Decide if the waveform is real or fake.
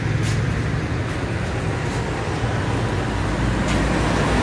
real